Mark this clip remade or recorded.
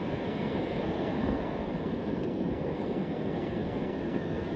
remade